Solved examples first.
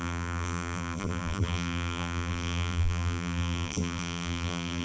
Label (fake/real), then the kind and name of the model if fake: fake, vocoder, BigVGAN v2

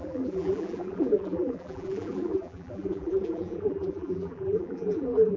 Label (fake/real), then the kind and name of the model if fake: fake, vocoder, BigVGAN v2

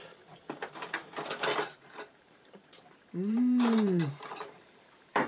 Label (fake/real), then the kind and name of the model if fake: fake, vocoder, BigVGAN v2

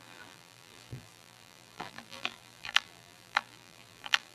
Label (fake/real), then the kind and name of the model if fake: fake, vocoder, BigVGAN v2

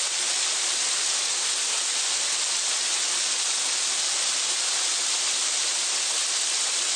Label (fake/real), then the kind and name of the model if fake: real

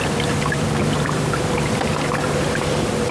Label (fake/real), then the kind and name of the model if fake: real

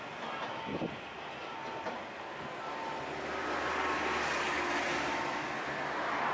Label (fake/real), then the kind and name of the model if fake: real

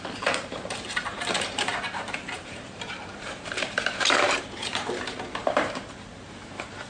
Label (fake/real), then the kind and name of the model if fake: fake, vocoder, BigVGAN v2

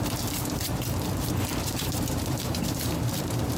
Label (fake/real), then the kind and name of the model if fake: fake, vocoder, BigVGAN v2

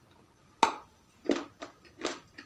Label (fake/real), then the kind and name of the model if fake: real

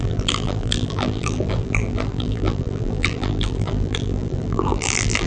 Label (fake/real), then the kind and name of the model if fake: fake, vocoder, BigVGAN v2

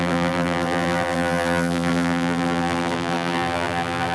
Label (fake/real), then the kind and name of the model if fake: fake, vocoder, BigVGAN v2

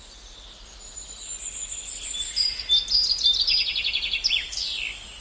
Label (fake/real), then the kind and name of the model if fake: real